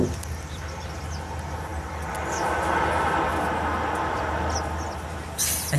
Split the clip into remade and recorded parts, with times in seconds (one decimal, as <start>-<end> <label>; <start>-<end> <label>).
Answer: 0.0-5.8 recorded